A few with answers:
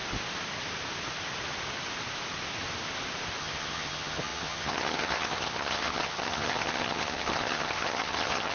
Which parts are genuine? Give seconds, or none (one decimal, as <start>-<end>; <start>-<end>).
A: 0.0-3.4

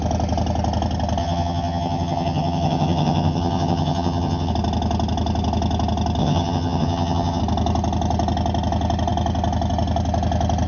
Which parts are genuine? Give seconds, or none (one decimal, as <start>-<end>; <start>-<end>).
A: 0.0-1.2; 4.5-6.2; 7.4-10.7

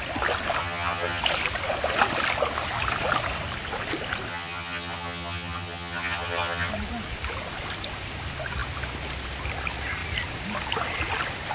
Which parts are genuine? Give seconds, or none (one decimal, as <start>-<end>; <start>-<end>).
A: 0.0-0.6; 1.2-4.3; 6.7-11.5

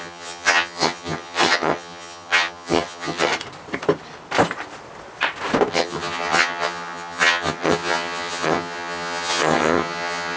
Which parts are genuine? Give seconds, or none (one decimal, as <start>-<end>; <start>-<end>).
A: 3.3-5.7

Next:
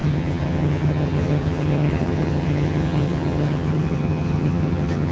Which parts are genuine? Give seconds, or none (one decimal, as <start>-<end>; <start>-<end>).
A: none

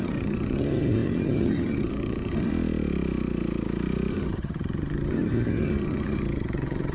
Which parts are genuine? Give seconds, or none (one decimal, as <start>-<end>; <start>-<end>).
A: 2.5-4.1

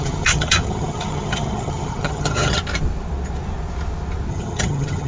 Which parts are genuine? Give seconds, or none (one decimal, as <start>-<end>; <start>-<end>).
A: 2.6-4.3

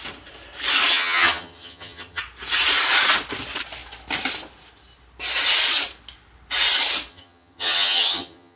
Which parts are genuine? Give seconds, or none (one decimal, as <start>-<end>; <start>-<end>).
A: 0.0-0.9; 2.2-7.1